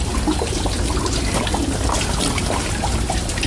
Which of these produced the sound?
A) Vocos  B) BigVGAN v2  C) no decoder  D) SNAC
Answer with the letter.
C